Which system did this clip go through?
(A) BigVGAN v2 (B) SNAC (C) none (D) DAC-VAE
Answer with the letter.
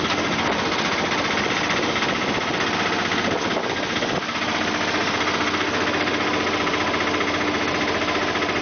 C